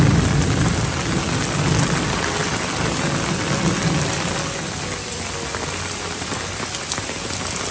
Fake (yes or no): no